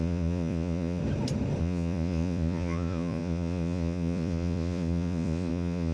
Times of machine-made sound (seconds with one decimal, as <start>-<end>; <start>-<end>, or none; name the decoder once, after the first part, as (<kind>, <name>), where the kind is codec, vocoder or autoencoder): 0.0-1.0 (vocoder, Vocos); 1.6-5.9